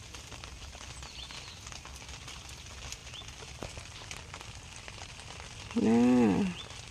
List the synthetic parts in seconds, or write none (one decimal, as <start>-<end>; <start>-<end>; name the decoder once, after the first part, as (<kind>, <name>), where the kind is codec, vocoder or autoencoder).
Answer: none